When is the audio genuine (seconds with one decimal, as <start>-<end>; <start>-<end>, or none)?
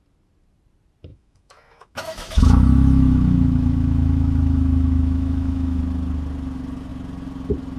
0.0-1.1; 5.8-7.8